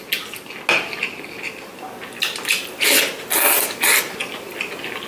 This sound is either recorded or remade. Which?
recorded